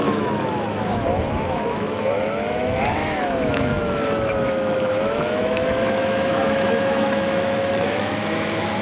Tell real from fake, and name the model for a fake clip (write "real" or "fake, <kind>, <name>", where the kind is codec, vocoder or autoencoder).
fake, autoencoder, DAC-VAE